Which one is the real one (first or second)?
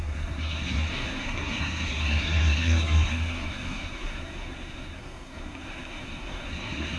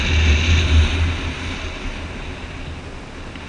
second